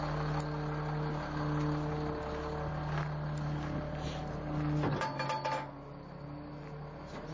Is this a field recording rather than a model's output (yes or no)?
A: yes